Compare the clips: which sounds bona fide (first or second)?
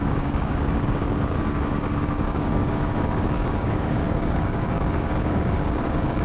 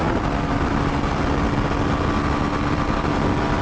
second